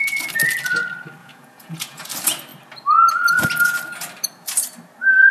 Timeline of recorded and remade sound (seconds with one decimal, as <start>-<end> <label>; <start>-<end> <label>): 0.0-1.2 recorded; 1.2-2.1 remade; 2.1-5.3 recorded